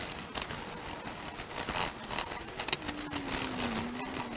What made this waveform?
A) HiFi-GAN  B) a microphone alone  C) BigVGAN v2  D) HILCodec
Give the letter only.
B